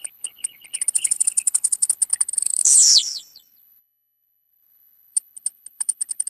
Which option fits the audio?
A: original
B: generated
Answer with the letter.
B